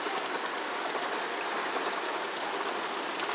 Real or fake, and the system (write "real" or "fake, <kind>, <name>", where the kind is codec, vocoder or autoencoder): fake, vocoder, BigVGAN v2